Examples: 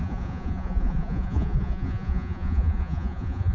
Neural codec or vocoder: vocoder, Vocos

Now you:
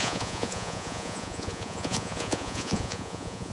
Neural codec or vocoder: vocoder, Vocos